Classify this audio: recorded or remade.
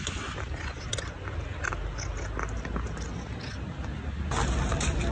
recorded